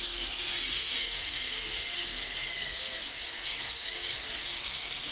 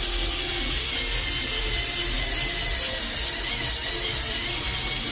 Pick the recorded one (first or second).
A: second